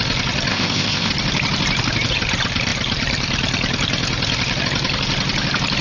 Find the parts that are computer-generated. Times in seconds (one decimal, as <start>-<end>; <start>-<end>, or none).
0.5-1.1